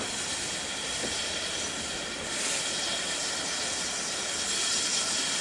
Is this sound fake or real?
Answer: real